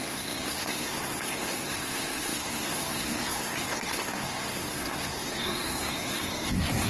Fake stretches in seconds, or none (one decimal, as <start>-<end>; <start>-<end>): 0.0-6.9